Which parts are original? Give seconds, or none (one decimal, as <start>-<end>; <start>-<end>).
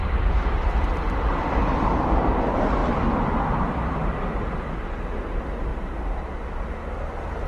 1.6-2.8; 4.7-7.5